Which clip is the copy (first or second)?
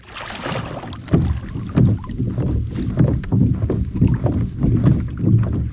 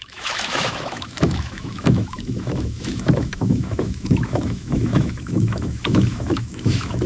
second